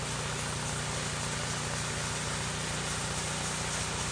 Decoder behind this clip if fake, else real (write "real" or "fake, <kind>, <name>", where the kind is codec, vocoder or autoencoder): real